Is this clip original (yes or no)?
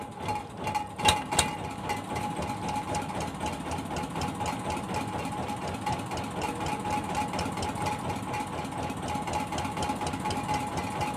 yes